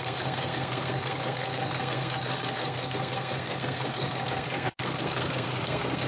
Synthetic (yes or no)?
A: yes